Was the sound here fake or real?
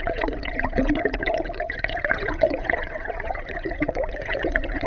fake